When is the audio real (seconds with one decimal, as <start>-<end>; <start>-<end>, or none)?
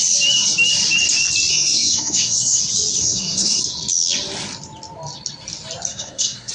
0.0-1.5; 2.6-3.0; 3.6-5.9